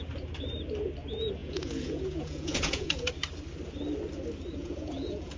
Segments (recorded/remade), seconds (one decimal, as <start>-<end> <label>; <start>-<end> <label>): 0.0-1.4 recorded; 1.4-3.1 remade; 3.1-4.6 recorded; 4.6-5.4 remade